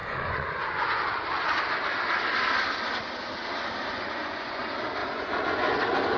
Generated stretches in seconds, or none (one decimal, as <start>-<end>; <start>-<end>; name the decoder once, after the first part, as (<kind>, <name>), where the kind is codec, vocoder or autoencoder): 0.0-1.0 (vocoder, Vocos); 3.9-4.6; 5.0-5.8